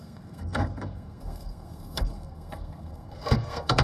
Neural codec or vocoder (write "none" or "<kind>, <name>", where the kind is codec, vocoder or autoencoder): codec, SNAC